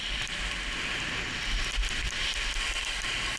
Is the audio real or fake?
real